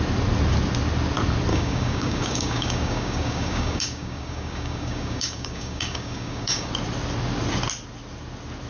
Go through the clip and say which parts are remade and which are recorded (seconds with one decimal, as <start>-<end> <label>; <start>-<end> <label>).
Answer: 0.0-1.5 recorded; 1.5-6.7 remade; 6.7-8.7 recorded